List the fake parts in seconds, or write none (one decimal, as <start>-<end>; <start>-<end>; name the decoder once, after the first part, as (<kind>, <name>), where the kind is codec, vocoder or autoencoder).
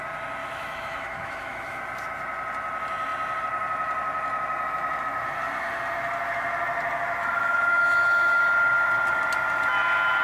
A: 0.4-1.8 (autoencoder, DAC-VAE); 7.2-8.4